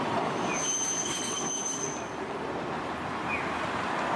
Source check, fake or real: real